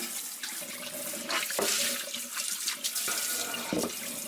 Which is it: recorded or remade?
recorded